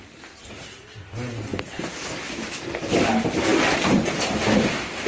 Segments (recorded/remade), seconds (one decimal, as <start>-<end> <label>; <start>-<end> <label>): 0.0-5.1 recorded